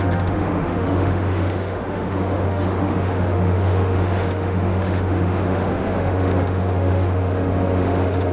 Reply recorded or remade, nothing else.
remade